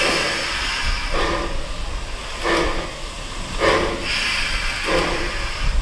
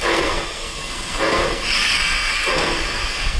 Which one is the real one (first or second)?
first